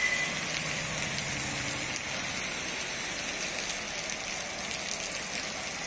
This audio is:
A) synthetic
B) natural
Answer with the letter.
B